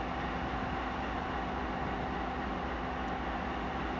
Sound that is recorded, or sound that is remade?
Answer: recorded